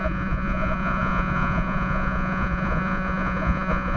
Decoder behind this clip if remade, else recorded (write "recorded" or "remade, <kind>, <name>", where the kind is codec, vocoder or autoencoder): remade, vocoder, Vocos